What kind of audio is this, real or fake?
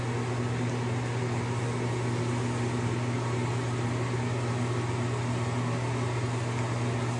real